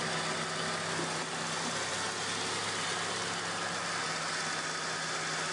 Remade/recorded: recorded